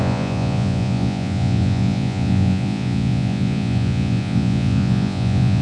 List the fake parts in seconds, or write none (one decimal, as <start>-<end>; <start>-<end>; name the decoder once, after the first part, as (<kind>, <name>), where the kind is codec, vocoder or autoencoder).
0.0-5.6 (vocoder, Vocos)